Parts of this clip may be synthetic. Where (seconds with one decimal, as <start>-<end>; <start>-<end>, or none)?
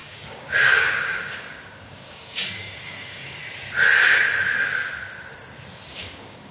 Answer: 0.0-3.4; 6.0-6.5